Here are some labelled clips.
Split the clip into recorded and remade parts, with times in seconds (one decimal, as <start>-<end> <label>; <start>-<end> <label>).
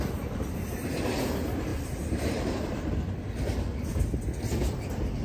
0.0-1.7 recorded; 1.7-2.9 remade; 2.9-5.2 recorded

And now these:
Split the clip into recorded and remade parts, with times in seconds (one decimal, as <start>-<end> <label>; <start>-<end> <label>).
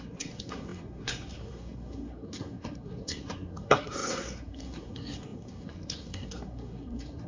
0.0-7.3 remade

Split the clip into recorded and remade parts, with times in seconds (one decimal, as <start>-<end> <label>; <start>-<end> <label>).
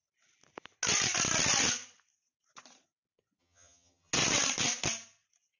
0.0-3.4 recorded; 3.4-4.1 remade; 4.1-5.6 recorded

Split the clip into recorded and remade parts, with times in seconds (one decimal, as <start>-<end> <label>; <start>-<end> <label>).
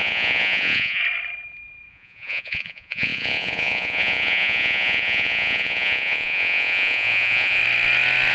0.0-1.0 remade; 1.0-1.9 recorded; 1.9-7.6 remade; 7.6-8.3 recorded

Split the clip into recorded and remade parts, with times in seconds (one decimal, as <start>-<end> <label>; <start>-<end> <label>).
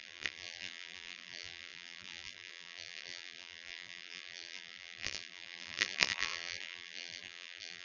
0.0-7.8 remade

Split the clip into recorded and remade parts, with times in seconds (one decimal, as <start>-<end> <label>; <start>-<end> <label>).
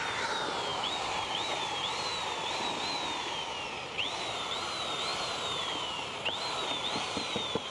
0.0-7.7 recorded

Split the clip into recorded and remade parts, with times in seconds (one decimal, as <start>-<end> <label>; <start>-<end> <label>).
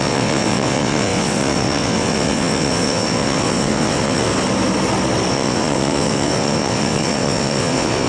0.0-4.3 remade; 4.3-5.3 recorded; 5.3-8.1 remade